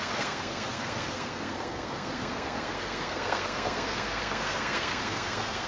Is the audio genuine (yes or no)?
no